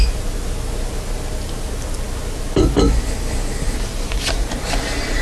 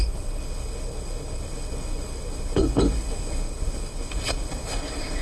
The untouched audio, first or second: first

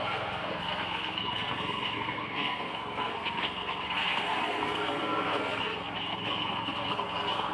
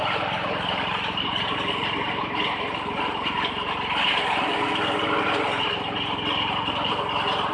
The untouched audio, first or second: second